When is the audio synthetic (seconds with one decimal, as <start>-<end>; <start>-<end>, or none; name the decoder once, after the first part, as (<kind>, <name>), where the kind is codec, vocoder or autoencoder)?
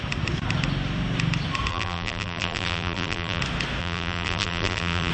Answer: 1.7-3.4 (vocoder, BigVGAN v2); 3.8-5.1